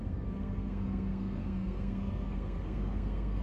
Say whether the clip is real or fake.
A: fake